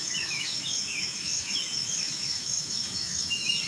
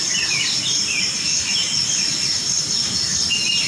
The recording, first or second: second